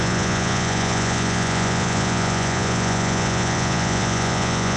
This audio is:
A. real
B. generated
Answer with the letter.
B